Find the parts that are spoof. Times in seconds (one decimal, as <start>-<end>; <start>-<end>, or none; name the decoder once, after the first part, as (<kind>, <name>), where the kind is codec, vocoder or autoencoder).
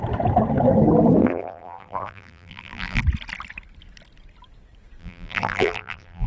1.2-3.0 (vocoder, BigVGAN v2); 5.0-6.3